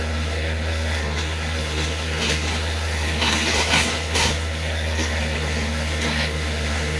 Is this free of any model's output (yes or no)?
no